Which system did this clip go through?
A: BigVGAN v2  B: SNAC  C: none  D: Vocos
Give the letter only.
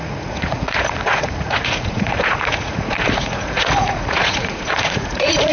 D